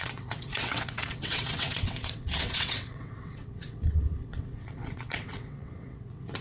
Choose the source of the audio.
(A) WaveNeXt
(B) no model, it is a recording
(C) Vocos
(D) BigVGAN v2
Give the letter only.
A